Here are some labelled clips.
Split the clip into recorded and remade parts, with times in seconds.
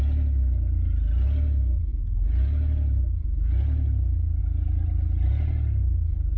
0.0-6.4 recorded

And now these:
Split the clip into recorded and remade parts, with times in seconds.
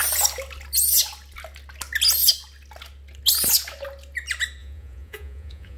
0.0-4.6 recorded; 4.6-5.8 remade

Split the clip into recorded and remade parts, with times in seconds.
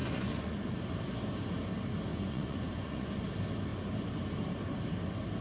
0.0-0.6 remade; 0.6-2.1 recorded; 2.1-3.2 remade; 3.2-5.4 recorded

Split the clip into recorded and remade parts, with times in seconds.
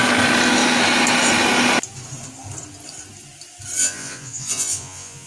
0.0-3.8 recorded; 3.8-5.3 remade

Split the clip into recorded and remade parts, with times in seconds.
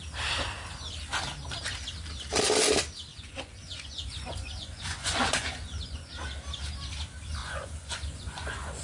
0.0-3.1 recorded; 3.1-6.1 remade; 6.1-7.4 recorded; 7.4-8.8 remade